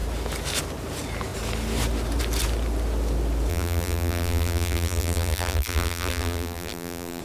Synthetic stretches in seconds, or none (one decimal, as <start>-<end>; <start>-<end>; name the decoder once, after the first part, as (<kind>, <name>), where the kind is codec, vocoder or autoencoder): 3.5-7.2 (vocoder, BigVGAN v2)